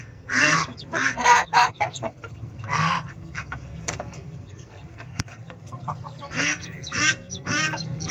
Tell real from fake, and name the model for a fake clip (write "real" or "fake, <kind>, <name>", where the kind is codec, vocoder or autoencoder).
fake, codec, SNAC